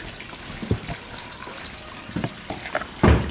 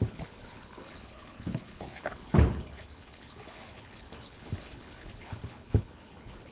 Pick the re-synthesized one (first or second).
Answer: second